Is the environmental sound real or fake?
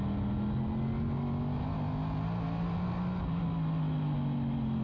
real